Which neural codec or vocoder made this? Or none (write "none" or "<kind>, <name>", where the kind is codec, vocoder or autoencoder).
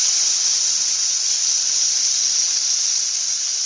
none